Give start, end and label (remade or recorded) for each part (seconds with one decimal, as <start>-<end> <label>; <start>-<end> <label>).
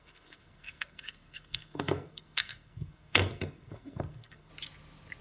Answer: 0.0-4.5 remade; 4.5-5.2 recorded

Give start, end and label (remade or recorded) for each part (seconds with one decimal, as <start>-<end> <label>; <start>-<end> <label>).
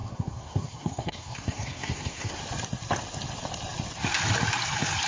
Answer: 0.0-2.4 remade; 2.4-5.1 recorded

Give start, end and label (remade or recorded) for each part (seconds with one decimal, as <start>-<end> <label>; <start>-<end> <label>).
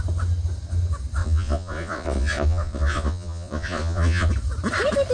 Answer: 0.0-1.2 recorded; 1.2-4.3 remade; 4.3-5.1 recorded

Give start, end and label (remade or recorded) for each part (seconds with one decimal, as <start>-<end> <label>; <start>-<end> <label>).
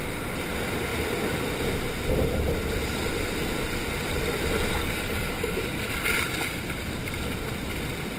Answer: 0.0-4.8 recorded; 4.8-5.8 remade; 5.8-8.2 recorded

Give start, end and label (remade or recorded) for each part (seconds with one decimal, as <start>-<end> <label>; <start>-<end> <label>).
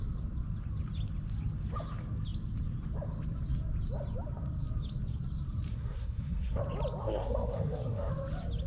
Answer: 0.0-5.7 recorded; 5.7-6.6 remade; 6.6-7.0 recorded; 7.0-8.1 remade; 8.1-8.7 recorded